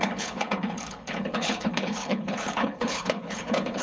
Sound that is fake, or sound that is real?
fake